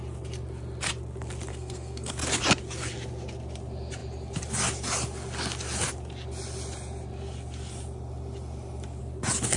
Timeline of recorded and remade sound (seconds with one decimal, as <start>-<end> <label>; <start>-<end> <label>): 0.0-1.5 recorded; 1.5-2.1 remade; 2.1-9.6 recorded